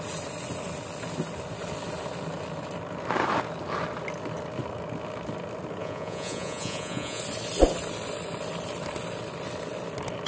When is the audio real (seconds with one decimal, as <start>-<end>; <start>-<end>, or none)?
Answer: 0.0-5.8; 7.2-10.3

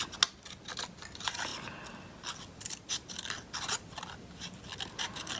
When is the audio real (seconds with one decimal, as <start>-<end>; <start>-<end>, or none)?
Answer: 0.0-2.8; 3.8-5.4

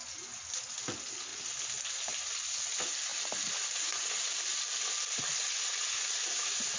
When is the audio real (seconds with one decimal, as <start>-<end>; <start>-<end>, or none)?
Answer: 0.0-6.8

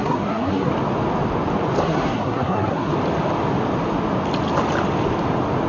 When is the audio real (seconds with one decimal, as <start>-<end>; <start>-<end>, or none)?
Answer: 0.7-1.8; 2.9-5.7

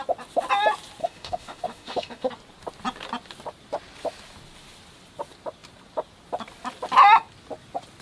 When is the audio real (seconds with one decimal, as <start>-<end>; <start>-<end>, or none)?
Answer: 0.0-1.0; 2.3-8.0

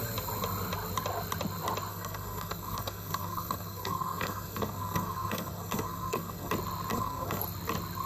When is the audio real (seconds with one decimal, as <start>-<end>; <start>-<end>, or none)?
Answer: 0.0-1.9; 6.5-6.9; 7.4-8.1

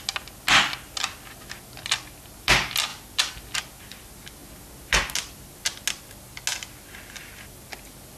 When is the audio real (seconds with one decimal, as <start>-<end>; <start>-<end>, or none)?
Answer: 0.0-8.2